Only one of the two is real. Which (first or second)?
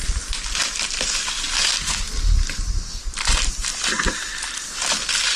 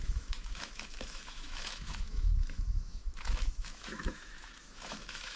first